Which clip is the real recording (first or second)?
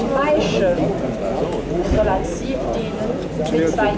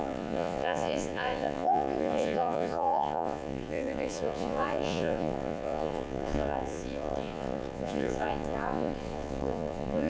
first